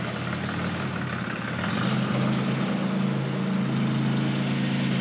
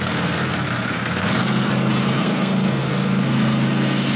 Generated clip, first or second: second